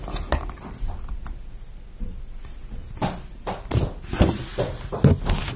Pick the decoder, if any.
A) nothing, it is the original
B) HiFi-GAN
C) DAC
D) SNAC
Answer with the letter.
A